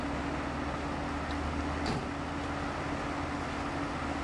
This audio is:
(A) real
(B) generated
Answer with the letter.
A